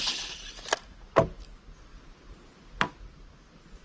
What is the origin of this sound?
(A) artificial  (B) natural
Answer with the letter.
B